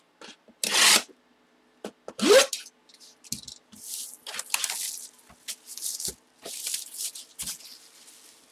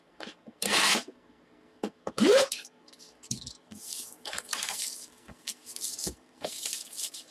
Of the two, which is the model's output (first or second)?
second